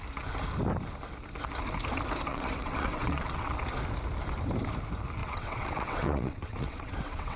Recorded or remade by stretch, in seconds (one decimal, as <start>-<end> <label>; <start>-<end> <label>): 0.0-2.3 recorded; 2.3-3.5 remade; 3.5-5.2 recorded; 5.2-7.4 remade